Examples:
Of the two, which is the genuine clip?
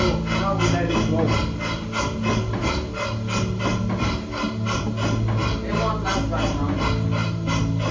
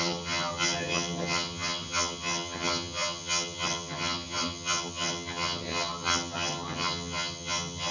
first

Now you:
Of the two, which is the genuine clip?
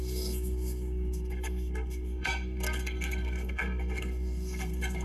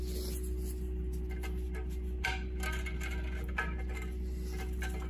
second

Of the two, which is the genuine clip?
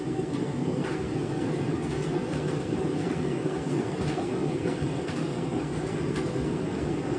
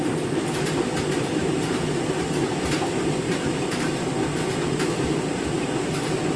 second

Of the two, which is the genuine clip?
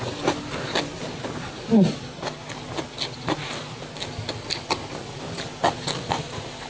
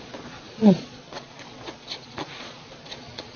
first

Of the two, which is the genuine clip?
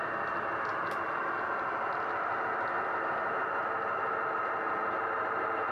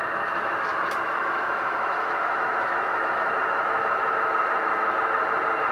first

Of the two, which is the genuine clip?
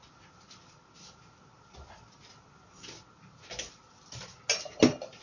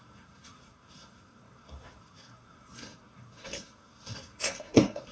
first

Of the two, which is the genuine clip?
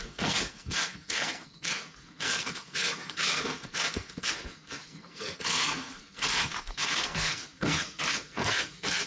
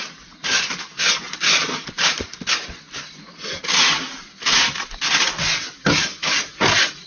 second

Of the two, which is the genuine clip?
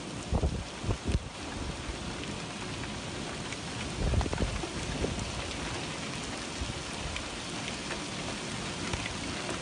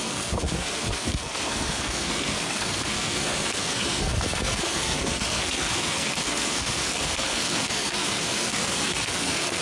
first